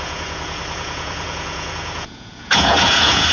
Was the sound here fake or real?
fake